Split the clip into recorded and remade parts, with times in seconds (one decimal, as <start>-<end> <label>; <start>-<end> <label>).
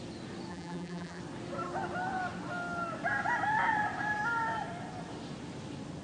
0.0-0.5 recorded; 0.5-1.2 remade; 1.2-6.0 recorded